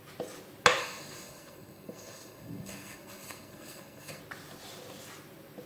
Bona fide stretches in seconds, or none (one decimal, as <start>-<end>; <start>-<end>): 0.0-0.8; 4.2-5.7